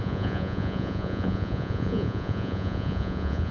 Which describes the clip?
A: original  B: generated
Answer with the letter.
B